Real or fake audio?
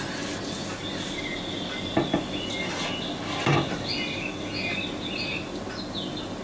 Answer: real